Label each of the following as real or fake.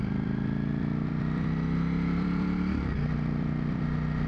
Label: fake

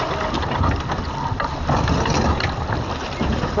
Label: real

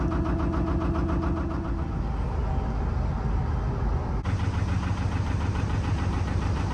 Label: real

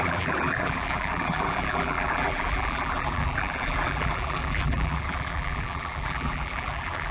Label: fake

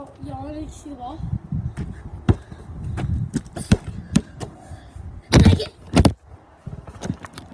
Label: real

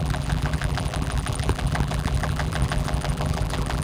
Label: fake